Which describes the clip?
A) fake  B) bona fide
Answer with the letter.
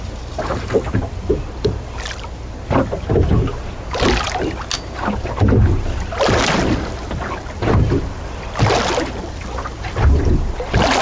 B